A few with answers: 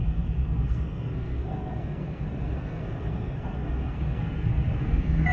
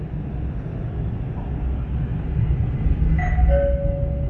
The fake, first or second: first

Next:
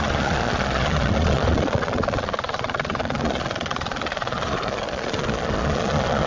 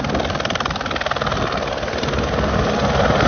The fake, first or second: first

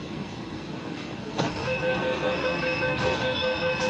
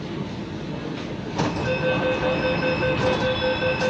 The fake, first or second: first